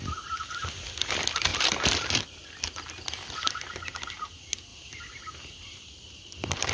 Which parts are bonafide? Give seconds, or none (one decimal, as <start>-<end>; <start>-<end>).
0.0-1.5; 2.3-4.7